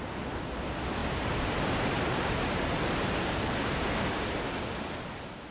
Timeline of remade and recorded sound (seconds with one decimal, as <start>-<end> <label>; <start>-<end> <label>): 0.0-1.0 recorded; 1.0-4.3 remade; 4.3-5.5 recorded

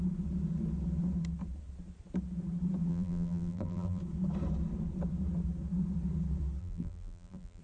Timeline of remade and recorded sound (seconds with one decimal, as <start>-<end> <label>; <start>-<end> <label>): 0.0-2.9 recorded; 2.9-4.0 remade; 4.0-6.6 recorded; 6.6-7.6 remade

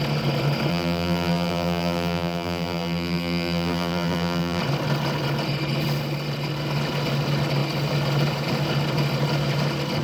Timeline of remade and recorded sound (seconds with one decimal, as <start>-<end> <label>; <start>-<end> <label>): 0.0-0.7 recorded; 0.7-4.6 remade; 4.6-10.0 recorded

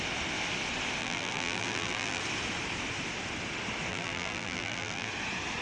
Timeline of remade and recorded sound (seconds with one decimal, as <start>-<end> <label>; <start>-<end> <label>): 0.0-1.0 recorded; 1.0-2.2 remade; 2.2-3.9 recorded; 3.9-5.1 remade; 5.1-5.6 recorded

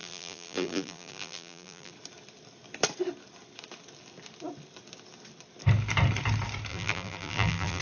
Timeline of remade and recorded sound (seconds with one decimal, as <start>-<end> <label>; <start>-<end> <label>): 0.0-1.9 remade; 1.9-6.7 recorded; 6.7-7.8 remade

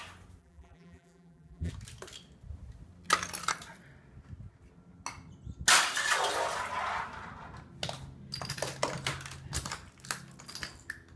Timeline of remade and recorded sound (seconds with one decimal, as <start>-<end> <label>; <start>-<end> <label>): 0.0-0.4 recorded; 0.4-1.7 remade; 1.7-11.2 recorded

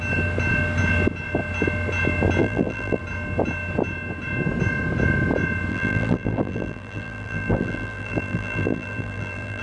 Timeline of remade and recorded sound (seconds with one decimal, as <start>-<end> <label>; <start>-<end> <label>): 0.0-2.4 recorded; 2.4-3.0 remade; 3.0-5.7 recorded; 5.7-9.6 remade

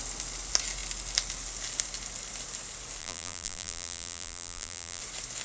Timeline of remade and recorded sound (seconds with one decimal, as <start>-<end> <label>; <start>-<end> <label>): 0.0-3.0 recorded; 3.0-5.0 remade; 5.0-5.4 recorded